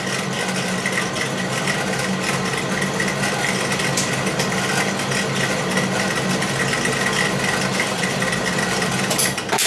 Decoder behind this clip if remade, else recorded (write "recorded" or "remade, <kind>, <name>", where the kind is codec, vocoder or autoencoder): recorded